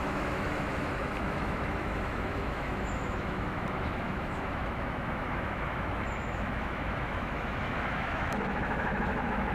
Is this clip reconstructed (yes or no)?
yes